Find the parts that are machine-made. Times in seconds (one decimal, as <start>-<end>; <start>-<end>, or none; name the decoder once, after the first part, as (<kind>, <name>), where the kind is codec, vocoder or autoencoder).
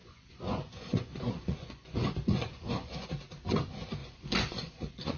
0.0-3.1 (vocoder, Vocos); 4.0-5.2